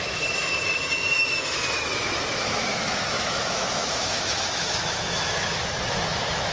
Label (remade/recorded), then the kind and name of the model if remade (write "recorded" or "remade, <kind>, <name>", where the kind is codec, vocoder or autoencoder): remade, autoencoder, DAC-VAE